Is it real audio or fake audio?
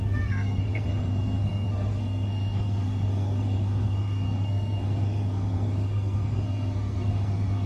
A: fake